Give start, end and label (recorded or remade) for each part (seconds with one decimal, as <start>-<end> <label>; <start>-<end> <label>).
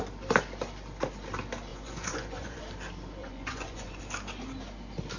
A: 0.0-1.7 recorded; 1.7-2.6 remade; 2.6-3.2 recorded; 3.2-4.0 remade; 4.0-5.2 recorded